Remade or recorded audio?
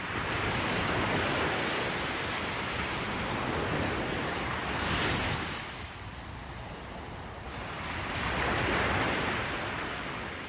recorded